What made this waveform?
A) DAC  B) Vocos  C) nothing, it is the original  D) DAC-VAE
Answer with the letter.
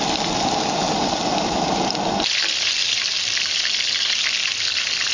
C